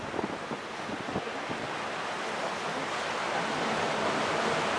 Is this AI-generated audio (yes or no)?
no